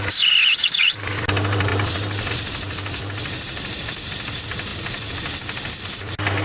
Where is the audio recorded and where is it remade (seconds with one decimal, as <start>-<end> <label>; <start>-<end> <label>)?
0.0-0.6 recorded; 0.6-1.1 remade; 1.1-6.4 recorded